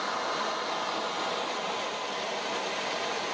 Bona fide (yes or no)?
no